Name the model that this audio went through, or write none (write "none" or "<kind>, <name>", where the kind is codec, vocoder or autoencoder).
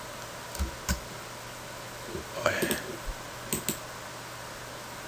none